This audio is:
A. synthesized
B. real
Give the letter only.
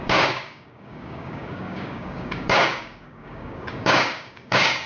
A